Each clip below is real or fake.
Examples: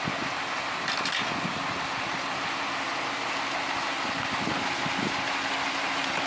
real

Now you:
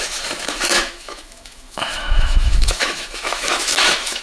fake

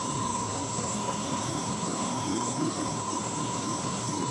fake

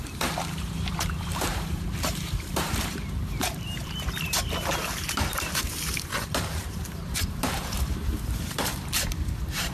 fake